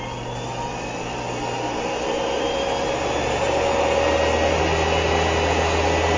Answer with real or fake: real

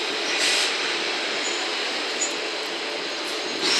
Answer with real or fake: real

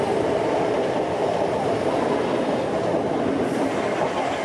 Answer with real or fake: real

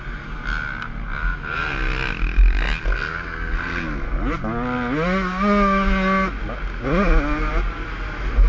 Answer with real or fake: real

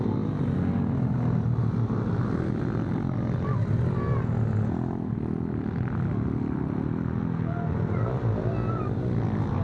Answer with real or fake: real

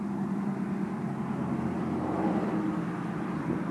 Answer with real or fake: real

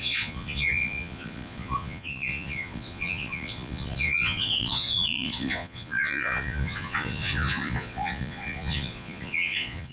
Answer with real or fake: fake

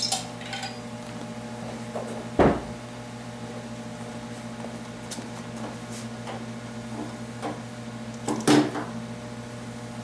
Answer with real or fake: real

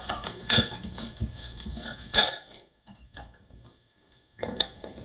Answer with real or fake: fake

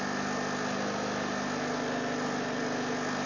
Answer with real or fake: real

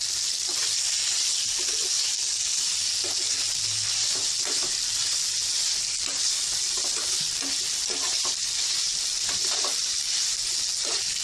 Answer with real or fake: real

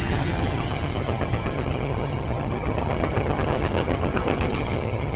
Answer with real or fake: fake